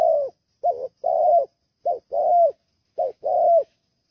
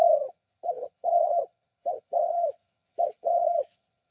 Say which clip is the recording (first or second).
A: first